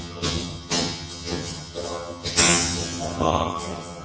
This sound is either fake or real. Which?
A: fake